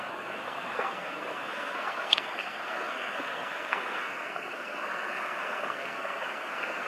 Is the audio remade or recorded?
remade